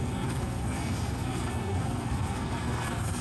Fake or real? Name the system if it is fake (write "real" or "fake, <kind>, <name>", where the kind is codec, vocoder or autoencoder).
fake, codec, SNAC